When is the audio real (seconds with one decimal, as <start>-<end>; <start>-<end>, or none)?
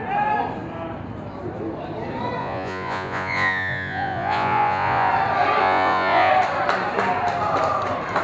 0.0-2.4; 5.1-5.6; 6.3-8.2